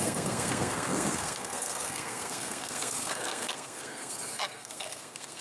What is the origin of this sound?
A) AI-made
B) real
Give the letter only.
A